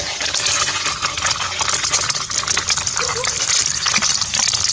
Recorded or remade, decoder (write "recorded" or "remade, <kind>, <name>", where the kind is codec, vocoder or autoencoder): recorded